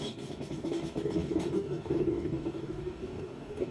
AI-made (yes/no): yes